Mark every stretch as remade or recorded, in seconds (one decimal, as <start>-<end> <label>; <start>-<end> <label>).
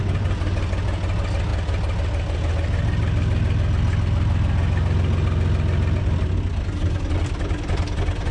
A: 0.0-8.3 recorded